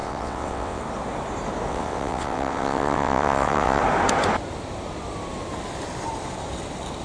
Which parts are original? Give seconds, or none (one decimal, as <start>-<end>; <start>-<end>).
0.8-1.7; 3.8-7.0